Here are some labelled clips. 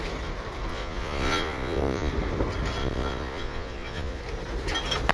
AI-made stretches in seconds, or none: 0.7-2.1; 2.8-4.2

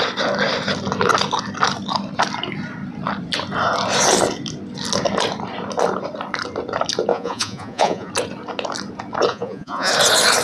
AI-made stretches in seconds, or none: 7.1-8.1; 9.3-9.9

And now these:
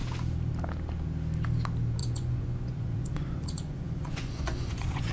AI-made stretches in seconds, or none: 2.0-5.1

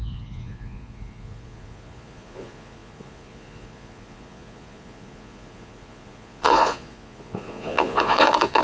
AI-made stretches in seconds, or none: 0.0-8.6

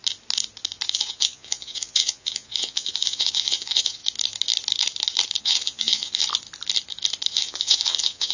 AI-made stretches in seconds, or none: 0.9-4.0; 5.4-6.2; 7.3-8.3

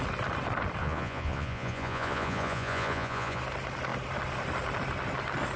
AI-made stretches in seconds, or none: 0.8-3.4

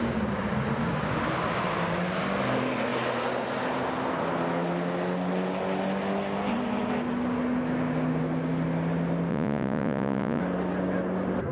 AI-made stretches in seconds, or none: 9.3-10.4